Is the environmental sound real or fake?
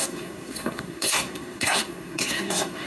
fake